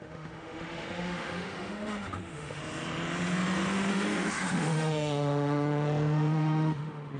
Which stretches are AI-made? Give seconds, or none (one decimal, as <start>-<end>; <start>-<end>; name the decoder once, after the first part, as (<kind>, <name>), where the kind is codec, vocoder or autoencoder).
0.0-2.6 (autoencoder, DAC-VAE); 3.9-7.2